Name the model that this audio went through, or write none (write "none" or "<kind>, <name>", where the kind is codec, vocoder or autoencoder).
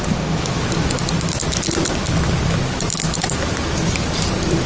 none